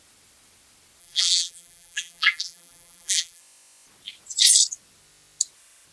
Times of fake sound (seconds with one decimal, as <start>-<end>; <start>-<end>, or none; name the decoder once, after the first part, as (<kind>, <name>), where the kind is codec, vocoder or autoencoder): 1.0-3.4 (vocoder, BigVGAN v2)